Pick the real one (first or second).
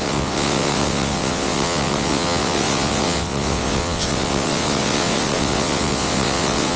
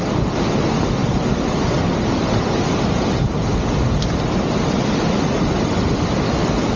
second